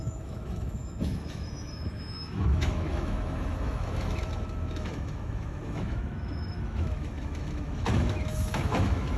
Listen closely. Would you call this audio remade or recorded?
remade